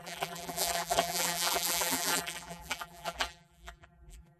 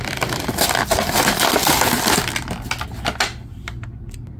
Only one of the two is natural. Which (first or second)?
second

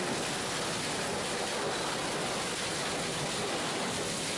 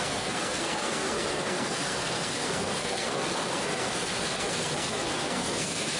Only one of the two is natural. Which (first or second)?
first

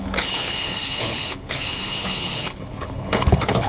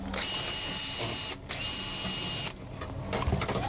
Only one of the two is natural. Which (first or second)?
second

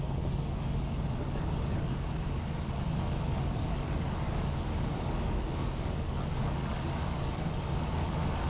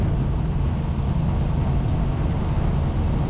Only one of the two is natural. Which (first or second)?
second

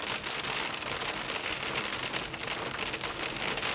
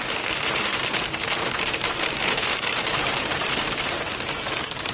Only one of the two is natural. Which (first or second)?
first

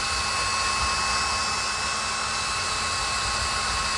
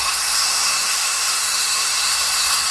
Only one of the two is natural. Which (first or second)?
first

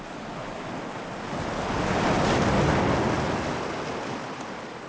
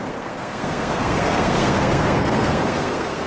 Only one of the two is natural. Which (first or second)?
first